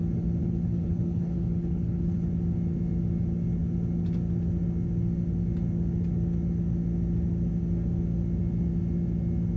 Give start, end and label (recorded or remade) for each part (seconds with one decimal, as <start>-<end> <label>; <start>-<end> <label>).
0.0-0.4 recorded; 0.4-2.3 remade; 2.3-9.6 recorded